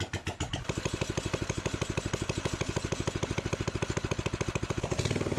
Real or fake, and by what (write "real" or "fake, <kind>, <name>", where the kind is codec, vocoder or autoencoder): real